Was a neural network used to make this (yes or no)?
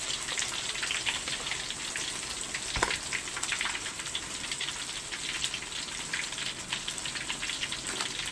no